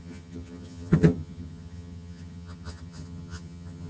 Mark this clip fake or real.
fake